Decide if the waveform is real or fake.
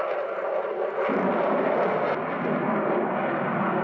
real